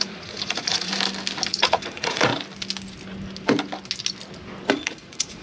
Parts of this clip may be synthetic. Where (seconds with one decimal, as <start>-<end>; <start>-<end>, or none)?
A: 0.0-0.9; 1.5-2.3; 4.7-5.4